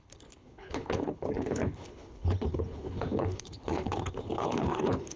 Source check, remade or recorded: remade